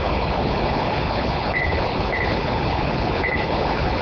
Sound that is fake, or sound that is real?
fake